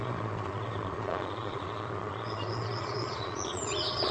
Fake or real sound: fake